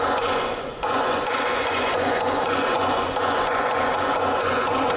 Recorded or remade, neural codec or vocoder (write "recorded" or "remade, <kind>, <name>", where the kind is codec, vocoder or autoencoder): remade, vocoder, Vocos